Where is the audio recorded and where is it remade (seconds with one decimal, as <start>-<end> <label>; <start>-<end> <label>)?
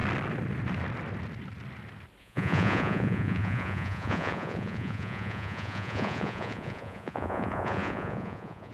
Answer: 0.0-2.2 recorded; 2.2-8.7 remade